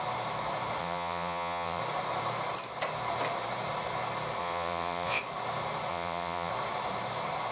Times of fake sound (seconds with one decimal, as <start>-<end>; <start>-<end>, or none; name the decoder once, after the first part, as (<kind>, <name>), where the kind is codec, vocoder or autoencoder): 0.8-1.8 (vocoder, Vocos); 4.4-5.2; 5.9-6.5